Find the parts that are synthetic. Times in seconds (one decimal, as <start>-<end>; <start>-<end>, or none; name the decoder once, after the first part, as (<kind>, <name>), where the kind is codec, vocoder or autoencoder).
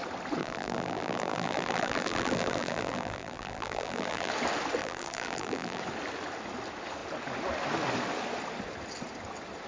0.4-4.3 (vocoder, BigVGAN v2); 4.8-5.8